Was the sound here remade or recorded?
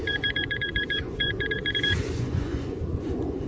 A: remade